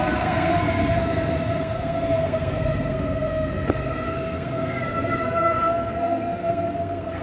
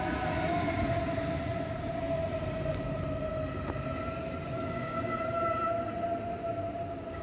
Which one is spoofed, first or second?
first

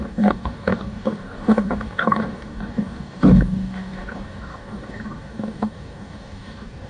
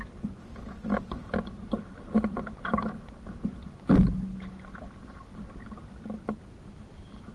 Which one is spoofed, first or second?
first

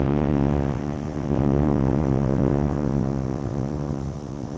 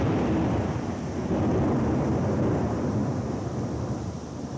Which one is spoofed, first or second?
first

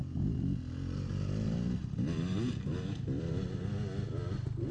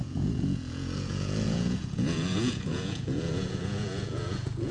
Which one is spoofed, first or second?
second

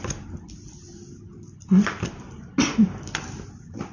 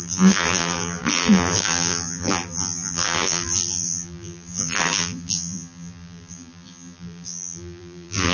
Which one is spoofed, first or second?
second